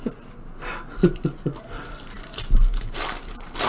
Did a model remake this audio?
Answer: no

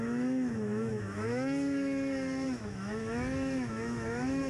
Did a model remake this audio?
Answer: yes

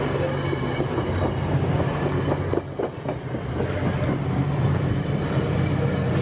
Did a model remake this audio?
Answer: no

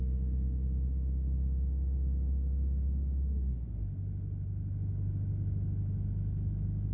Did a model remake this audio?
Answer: no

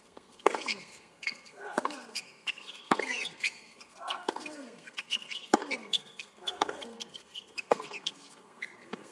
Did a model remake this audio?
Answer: yes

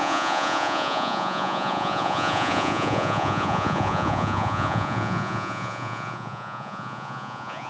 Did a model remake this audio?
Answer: yes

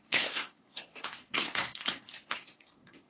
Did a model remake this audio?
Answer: yes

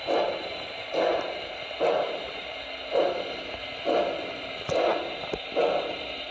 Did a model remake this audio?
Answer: no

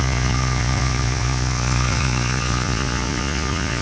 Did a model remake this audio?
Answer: yes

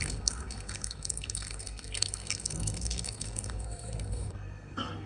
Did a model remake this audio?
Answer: yes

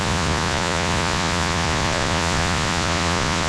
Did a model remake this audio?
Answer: yes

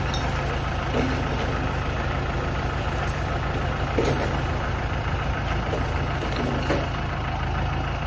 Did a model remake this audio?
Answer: no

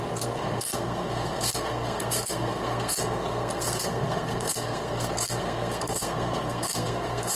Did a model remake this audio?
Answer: yes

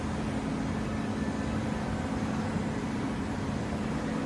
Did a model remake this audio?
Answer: no